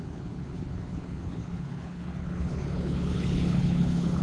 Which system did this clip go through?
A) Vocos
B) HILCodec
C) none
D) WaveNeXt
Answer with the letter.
B